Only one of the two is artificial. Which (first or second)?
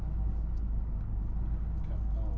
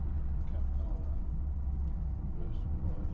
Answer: second